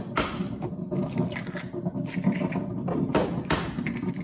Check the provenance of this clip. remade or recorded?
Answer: recorded